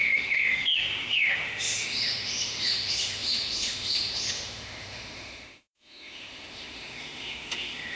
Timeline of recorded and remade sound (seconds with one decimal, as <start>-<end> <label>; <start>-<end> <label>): 0.0-8.0 remade